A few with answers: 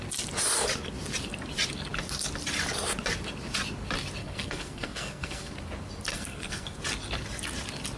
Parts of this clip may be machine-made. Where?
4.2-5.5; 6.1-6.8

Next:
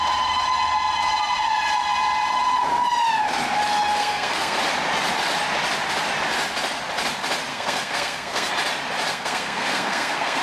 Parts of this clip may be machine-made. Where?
4.0-4.6; 7.5-8.5; 9.1-10.4